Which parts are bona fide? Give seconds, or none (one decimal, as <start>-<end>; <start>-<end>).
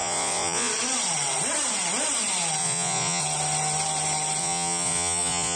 0.7-2.6; 3.2-4.4